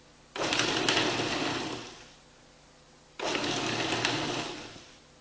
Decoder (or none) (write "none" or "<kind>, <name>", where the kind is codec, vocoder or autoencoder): none